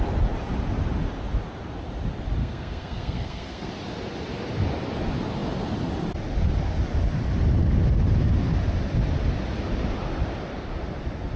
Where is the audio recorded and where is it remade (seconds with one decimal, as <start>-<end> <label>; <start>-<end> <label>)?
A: 0.0-2.4 recorded; 2.4-3.7 remade; 3.7-11.4 recorded